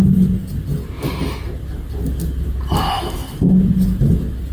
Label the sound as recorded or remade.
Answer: recorded